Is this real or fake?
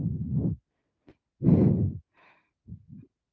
real